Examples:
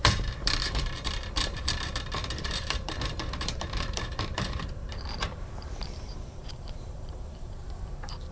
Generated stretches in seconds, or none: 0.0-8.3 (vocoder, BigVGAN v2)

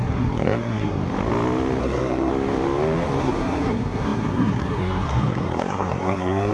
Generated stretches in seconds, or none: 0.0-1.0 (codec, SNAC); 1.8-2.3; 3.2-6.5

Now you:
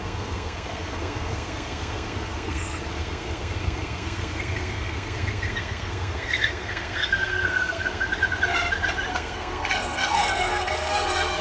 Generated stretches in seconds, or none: 0.0-8.1 (codec, SNAC); 9.1-11.4